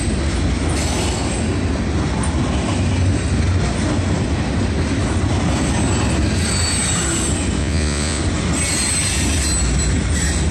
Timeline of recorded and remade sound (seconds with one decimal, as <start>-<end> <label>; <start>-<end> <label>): 0.0-7.6 recorded; 7.6-8.2 remade; 8.2-10.5 recorded